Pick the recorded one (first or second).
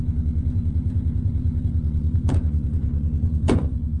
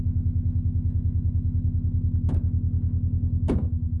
second